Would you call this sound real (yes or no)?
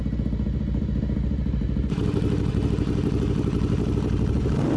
yes